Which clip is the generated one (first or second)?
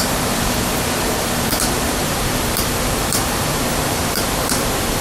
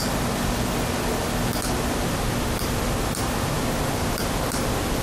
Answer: first